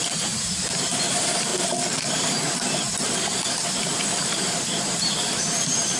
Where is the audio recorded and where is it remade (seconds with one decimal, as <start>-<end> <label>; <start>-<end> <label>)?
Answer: 0.0-1.5 remade; 1.5-4.8 recorded; 4.8-6.0 remade